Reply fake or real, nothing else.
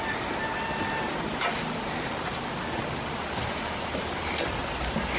real